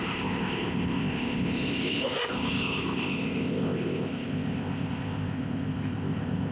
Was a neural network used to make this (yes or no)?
yes